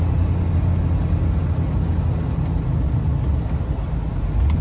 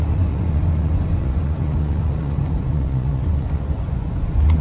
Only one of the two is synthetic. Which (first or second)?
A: second